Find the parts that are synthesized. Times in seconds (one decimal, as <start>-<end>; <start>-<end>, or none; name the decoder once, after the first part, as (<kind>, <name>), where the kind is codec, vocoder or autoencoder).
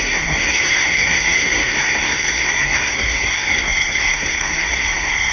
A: 0.0-5.3 (codec, SNAC)